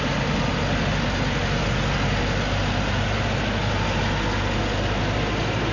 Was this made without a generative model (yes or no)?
yes